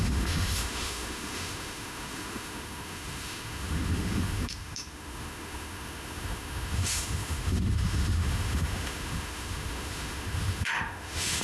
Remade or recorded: remade